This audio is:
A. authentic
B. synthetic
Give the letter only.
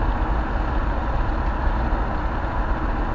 A